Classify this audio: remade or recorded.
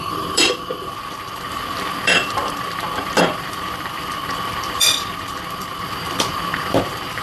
remade